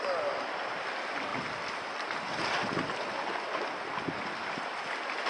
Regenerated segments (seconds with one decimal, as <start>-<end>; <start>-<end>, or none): none